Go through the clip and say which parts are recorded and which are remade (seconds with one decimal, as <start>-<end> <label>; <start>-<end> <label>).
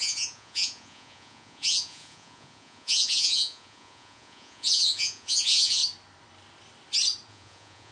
0.0-5.8 remade; 5.8-7.3 recorded; 7.3-7.9 remade